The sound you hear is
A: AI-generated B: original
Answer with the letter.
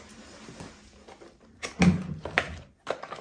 B